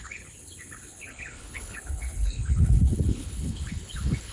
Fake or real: fake